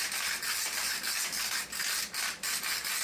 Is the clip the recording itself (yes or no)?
yes